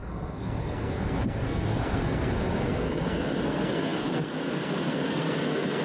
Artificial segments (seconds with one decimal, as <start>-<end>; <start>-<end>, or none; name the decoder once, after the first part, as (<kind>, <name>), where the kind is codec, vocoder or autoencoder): 0.0-5.8 (codec, SNAC)